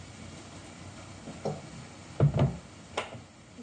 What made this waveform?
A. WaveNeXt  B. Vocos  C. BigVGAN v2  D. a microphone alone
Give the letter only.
D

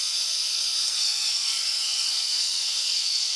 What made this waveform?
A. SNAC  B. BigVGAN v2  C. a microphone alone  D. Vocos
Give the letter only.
A